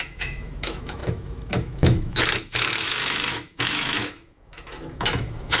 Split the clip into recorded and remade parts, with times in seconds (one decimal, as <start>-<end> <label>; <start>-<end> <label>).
0.0-5.6 remade